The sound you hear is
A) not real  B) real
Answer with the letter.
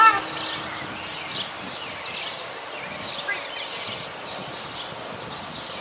B